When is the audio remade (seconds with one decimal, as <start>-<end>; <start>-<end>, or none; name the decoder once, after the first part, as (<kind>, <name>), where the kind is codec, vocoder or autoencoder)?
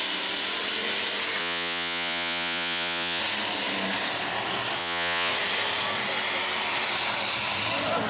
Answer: 1.4-3.2 (vocoder, Vocos); 4.8-5.3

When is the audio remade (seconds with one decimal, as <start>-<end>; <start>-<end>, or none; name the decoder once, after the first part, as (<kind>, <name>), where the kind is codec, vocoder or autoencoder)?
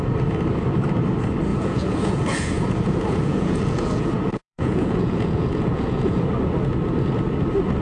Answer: 1.5-6.2 (vocoder, Vocos)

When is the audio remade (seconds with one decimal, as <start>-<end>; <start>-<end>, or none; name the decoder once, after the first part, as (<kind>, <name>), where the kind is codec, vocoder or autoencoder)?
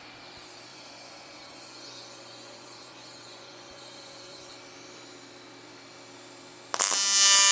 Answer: 0.7-4.5 (vocoder, Vocos)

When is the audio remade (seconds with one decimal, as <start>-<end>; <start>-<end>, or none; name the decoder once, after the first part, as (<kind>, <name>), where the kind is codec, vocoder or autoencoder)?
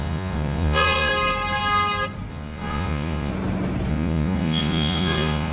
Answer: 0.0-1.1 (vocoder, Vocos); 2.3-3.3; 3.9-5.5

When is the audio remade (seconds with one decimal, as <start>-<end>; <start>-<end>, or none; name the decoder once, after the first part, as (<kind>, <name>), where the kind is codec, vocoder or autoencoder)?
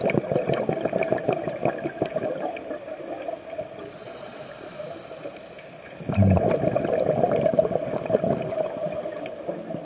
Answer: 4.0-4.5 (vocoder, Vocos)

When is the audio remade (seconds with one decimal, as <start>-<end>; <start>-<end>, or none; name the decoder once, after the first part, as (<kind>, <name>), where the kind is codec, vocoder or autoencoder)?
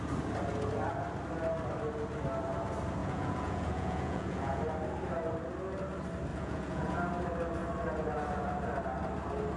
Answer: 3.0-4.6 (vocoder, Vocos); 6.3-7.0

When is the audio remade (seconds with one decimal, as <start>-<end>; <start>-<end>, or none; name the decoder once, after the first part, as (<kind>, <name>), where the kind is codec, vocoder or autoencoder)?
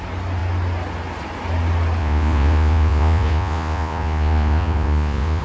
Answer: 2.0-5.4 (vocoder, Vocos)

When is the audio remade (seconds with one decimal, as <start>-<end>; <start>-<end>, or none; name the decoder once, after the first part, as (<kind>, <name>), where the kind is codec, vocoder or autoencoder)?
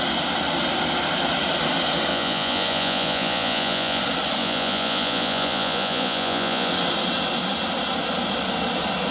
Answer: 2.1-4.0 (vocoder, Vocos); 4.4-6.7